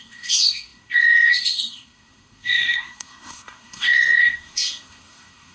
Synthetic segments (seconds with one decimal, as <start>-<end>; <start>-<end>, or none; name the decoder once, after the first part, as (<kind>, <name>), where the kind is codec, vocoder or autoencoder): 0.0-5.5 (codec, SNAC)